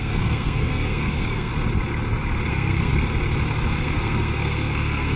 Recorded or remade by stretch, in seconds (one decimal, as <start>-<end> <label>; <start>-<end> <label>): 0.0-1.5 remade; 1.5-2.5 recorded; 2.5-2.9 remade; 2.9-3.8 recorded; 3.8-5.2 remade